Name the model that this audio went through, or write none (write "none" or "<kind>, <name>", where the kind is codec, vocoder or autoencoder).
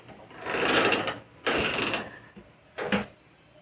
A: none